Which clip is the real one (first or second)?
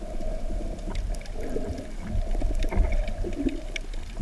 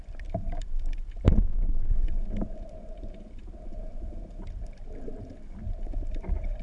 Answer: first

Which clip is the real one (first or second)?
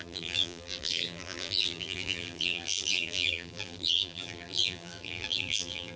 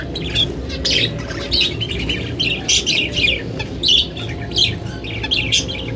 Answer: second